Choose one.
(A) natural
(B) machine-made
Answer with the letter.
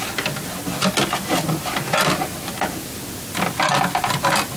A